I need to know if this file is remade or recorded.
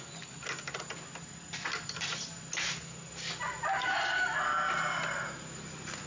recorded